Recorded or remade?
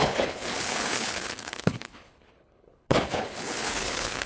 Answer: remade